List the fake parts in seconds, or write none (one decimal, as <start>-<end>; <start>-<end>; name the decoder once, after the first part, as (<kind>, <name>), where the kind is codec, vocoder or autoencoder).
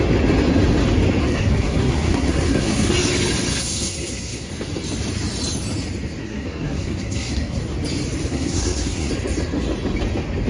1.2-2.9 (codec, SNAC); 3.5-4.5; 6.2-7.6; 8.3-9.1